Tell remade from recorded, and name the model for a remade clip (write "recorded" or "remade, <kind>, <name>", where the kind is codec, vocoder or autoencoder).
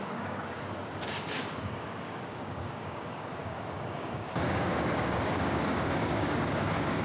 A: remade, codec, DAC